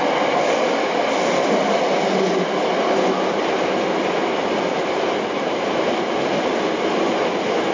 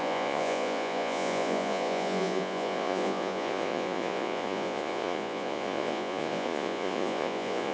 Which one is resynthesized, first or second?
second